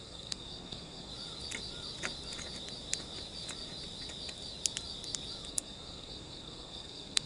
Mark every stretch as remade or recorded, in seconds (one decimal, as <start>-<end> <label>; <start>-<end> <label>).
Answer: 0.0-1.1 remade; 1.1-5.5 recorded; 5.5-7.3 remade